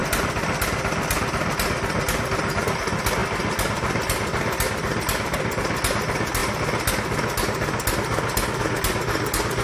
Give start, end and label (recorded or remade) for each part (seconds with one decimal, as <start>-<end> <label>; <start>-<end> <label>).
0.0-9.6 recorded